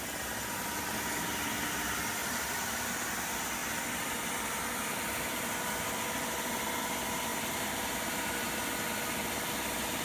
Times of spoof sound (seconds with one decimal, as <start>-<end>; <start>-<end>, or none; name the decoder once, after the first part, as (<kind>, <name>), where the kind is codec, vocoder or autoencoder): 2.2-2.9 (vocoder, BigVGAN v2); 7.3-8.6